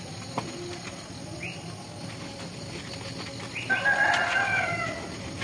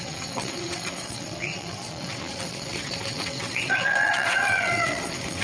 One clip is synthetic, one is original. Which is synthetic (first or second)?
second